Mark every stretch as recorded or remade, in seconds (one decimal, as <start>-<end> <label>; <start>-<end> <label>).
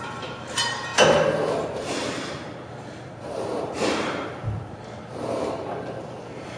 0.0-0.9 remade; 0.9-1.5 recorded; 1.5-6.6 remade